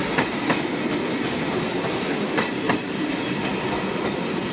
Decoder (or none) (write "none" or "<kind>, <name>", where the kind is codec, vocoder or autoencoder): none